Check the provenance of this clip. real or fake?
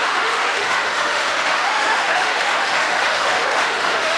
fake